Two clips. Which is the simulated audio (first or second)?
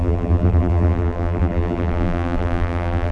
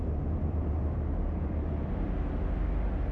first